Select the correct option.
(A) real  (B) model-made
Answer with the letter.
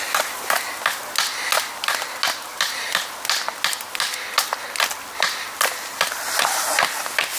A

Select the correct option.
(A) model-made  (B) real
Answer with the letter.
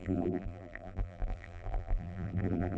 A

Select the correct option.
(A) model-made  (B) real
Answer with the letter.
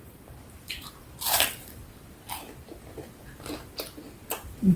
A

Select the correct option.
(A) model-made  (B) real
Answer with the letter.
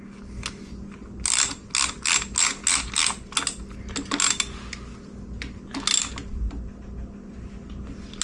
B